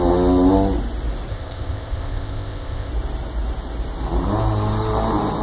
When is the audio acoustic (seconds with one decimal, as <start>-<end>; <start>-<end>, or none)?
0.0-1.3; 2.9-5.4